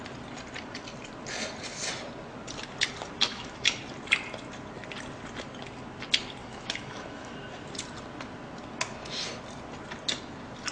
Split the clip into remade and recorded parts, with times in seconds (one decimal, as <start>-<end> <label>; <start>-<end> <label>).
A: 0.0-3.3 recorded; 3.3-3.8 remade; 3.8-6.4 recorded; 6.4-7.3 remade; 7.3-10.7 recorded